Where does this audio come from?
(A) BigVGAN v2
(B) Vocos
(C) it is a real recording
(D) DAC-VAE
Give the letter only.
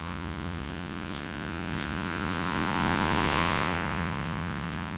B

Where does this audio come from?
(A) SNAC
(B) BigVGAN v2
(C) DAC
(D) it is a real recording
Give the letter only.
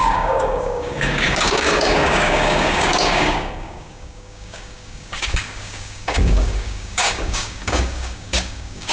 C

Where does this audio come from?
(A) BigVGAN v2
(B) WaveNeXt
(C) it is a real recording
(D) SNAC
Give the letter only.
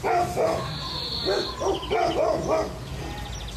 C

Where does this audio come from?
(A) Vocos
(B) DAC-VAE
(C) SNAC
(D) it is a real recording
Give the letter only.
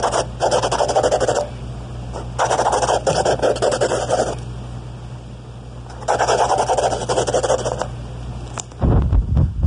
D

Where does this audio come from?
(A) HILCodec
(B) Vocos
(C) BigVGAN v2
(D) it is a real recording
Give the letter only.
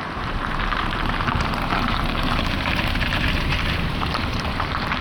C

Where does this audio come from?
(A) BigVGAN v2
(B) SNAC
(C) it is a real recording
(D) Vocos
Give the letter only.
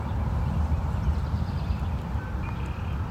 C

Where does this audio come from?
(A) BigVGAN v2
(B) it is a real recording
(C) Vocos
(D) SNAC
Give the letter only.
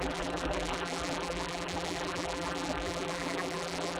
A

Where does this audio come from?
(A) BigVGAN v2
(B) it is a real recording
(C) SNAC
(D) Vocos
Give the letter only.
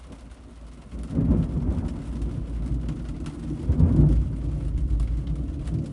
B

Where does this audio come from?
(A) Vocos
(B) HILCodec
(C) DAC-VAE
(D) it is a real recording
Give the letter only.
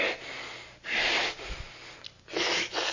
D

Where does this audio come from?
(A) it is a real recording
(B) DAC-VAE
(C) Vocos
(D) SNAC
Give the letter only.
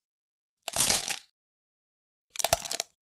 B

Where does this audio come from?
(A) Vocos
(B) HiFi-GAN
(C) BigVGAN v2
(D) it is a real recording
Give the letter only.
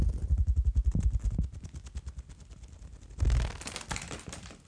D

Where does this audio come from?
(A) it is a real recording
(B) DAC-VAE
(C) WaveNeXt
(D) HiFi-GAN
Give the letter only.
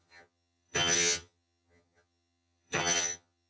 D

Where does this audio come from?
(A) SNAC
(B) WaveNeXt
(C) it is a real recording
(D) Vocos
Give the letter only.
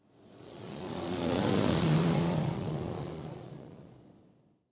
D